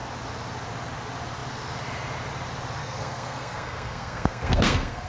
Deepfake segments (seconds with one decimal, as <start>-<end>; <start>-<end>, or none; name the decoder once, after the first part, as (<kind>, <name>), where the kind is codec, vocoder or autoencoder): 2.8-5.1 (codec, SNAC)